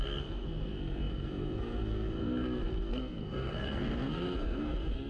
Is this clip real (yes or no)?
no